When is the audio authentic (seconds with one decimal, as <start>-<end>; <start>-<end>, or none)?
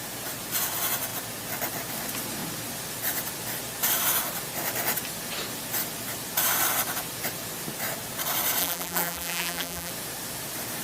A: 0.0-8.6; 9.9-10.8